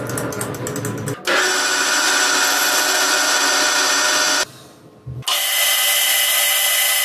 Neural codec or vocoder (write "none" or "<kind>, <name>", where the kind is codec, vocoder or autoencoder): none